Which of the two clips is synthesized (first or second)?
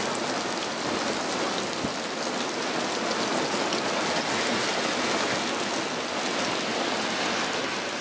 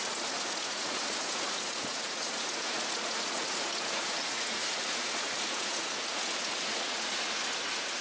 second